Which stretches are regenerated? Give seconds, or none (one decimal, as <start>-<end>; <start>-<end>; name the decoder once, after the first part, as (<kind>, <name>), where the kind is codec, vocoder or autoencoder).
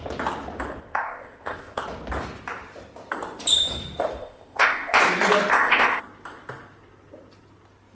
0.8-1.8 (codec, ZipCodec); 4.2-5.0; 5.5-6.0